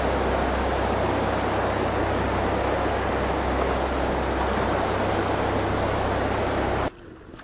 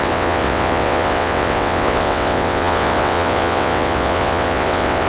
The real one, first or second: first